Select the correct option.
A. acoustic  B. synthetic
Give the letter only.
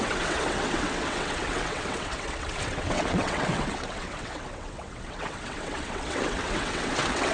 B